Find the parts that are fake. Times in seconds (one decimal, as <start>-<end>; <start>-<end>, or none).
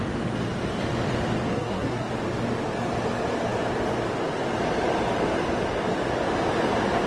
1.5-2.1